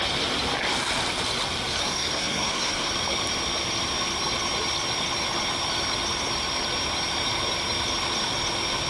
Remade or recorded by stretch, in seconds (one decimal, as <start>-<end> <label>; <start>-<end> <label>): 0.0-1.8 recorded; 1.8-2.9 remade; 2.9-8.9 recorded